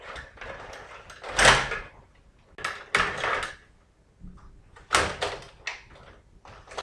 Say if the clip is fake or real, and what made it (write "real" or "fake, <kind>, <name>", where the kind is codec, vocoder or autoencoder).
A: real